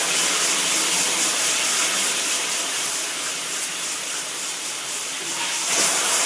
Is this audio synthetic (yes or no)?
no